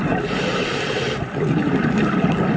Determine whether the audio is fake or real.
real